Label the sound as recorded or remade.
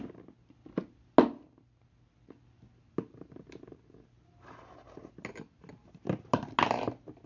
recorded